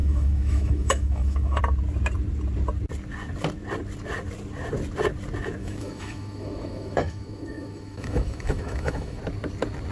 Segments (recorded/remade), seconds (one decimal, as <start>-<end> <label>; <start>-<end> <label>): 0.0-1.6 remade; 1.6-5.6 recorded; 5.6-9.2 remade; 9.2-9.9 recorded